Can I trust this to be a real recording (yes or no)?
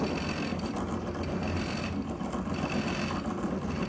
yes